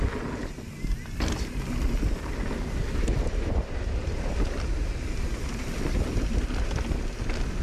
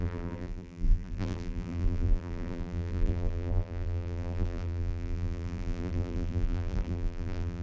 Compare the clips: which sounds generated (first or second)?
second